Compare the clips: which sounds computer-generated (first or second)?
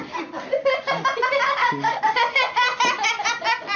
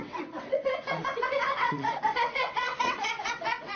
second